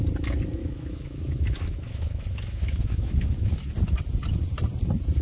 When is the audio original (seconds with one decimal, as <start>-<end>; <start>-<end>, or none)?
0.0-0.6; 3.7-5.2